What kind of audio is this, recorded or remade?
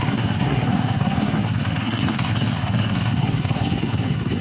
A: remade